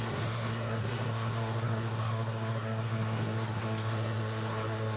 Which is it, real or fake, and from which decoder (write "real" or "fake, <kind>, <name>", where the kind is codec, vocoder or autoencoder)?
fake, codec, SNAC